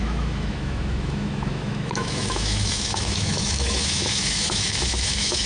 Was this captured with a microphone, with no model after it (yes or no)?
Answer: no